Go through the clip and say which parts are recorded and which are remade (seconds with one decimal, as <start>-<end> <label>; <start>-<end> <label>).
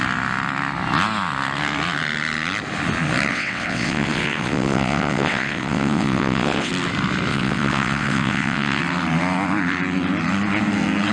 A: 0.0-3.3 recorded; 3.3-6.7 remade; 6.7-7.3 recorded; 7.3-8.8 remade; 8.8-11.1 recorded